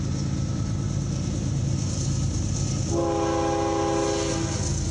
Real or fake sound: real